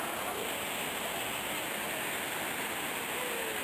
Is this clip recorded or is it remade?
recorded